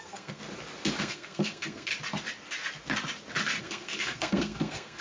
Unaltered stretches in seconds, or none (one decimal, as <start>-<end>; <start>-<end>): 0.4-1.0; 1.9-3.6